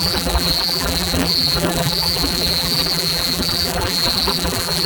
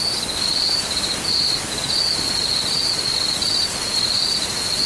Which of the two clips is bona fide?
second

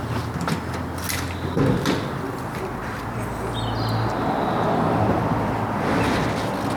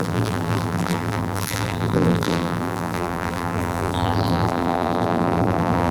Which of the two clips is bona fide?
first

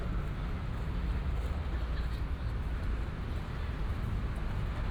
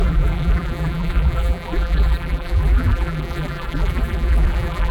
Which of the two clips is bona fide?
first